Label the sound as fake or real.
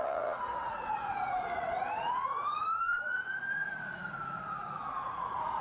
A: fake